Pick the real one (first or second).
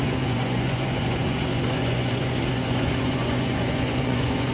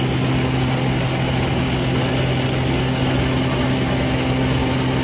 second